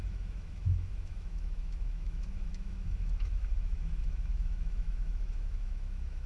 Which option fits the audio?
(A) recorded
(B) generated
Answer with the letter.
B